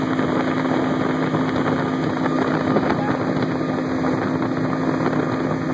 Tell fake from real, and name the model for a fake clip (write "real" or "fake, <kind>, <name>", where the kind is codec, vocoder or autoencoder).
real